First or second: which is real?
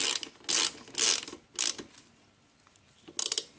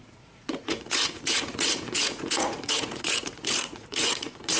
first